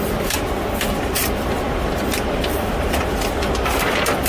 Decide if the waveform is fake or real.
fake